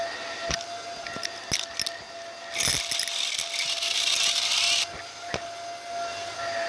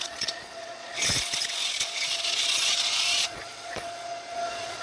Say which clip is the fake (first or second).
second